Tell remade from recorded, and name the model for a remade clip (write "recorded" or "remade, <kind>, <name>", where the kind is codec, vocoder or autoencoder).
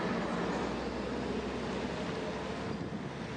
recorded